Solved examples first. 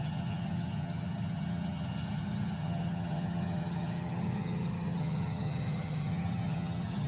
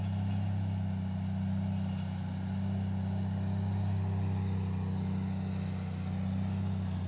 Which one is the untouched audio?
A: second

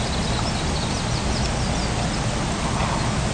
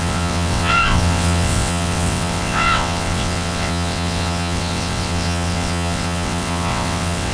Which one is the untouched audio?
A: first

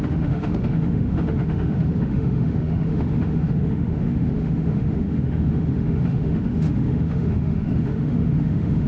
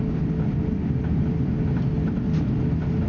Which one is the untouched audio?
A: second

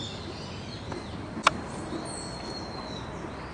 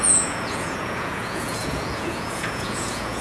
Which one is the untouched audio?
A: first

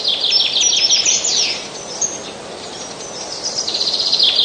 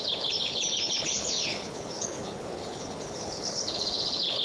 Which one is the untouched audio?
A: first